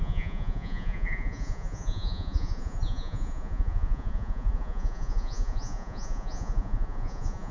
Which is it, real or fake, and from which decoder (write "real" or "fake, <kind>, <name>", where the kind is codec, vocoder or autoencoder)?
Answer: fake, vocoder, Vocos